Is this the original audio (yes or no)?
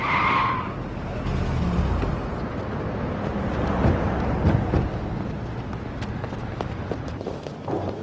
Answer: yes